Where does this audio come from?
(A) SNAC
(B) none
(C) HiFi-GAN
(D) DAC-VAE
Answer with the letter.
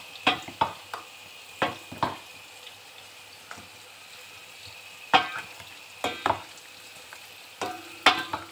B